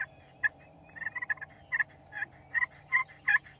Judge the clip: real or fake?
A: real